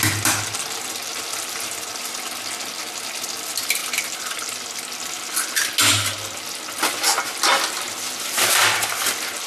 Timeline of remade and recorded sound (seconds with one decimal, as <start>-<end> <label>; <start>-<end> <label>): 0.0-3.8 recorded; 3.8-4.6 remade; 4.6-9.5 recorded